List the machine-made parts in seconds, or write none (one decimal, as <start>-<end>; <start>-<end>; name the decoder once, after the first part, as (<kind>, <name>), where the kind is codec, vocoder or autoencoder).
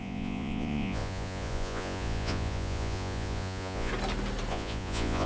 0.0-3.9 (vocoder, Vocos); 4.5-5.3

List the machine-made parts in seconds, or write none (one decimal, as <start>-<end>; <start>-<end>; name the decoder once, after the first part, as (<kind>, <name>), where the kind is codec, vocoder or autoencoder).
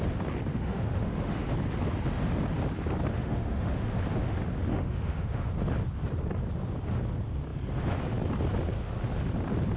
0.5-1.4 (autoencoder, DAC-VAE); 3.1-4.0; 4.7-5.5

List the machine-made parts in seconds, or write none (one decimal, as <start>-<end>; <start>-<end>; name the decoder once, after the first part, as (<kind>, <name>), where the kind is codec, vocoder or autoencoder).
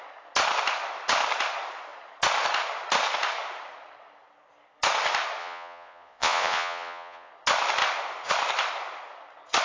5.4-7.3 (vocoder, Vocos)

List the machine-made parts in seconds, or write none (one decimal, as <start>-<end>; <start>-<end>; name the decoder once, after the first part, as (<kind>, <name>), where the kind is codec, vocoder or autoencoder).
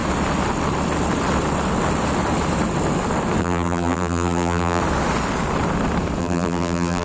3.4-4.8 (vocoder, BigVGAN v2); 6.2-7.0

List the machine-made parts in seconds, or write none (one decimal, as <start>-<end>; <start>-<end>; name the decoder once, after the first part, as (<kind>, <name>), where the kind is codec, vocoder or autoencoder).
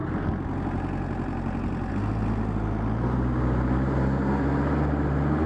none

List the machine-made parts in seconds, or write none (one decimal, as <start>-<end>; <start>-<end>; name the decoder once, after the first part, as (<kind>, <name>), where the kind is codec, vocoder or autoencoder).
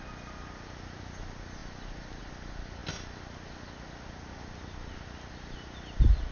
none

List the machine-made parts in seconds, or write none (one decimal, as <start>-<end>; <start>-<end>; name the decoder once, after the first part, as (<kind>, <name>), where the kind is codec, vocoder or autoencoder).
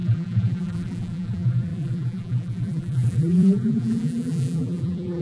0.0-5.2 (vocoder, BigVGAN v2)